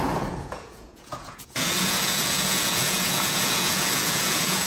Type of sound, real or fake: fake